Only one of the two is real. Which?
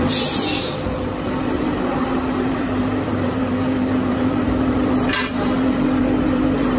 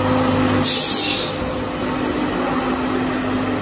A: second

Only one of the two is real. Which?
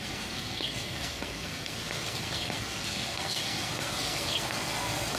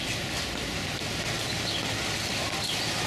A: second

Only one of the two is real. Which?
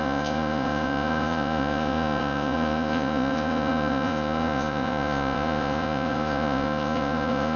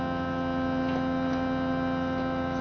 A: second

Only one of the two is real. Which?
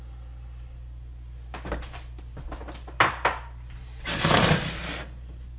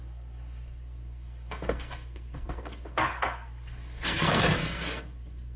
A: first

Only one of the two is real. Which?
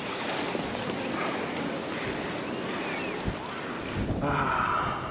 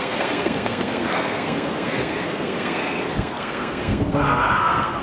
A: first